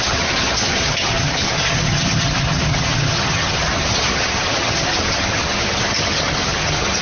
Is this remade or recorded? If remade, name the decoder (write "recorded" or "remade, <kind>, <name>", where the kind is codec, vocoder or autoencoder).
remade, vocoder, HiFi-GAN